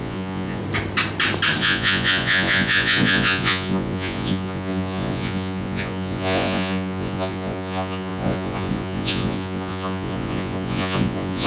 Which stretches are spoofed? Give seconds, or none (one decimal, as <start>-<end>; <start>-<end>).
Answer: 0.0-0.6; 1.6-11.5